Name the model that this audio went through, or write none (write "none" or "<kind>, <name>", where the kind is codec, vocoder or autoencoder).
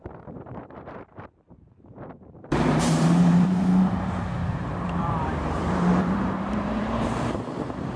vocoder, BigVGAN v2